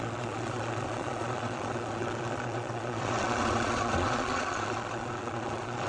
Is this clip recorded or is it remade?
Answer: remade